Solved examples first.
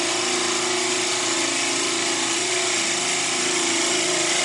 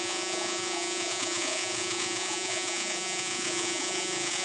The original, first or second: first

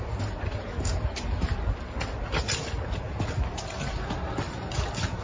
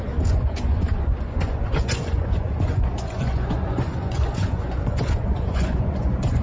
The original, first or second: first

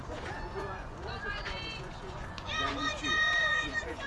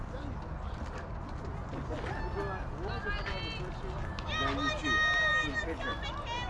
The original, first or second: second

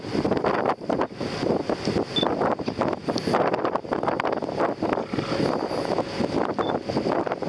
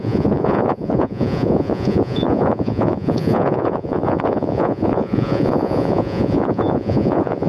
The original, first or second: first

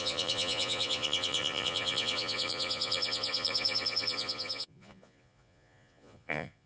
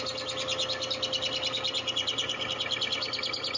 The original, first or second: second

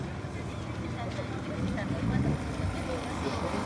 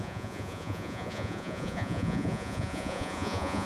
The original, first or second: first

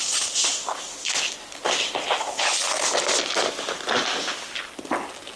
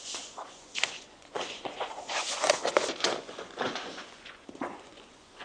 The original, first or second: first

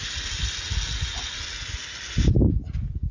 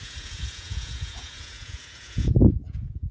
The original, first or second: first